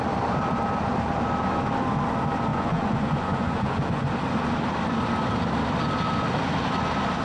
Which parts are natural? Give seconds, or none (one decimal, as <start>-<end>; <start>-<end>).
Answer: 0.0-2.5; 4.1-7.2